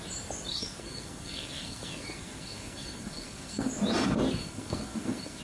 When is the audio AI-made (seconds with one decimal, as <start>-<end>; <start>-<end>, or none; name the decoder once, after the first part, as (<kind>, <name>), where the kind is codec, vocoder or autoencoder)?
0.5-3.7 (codec, SNAC); 4.4-5.4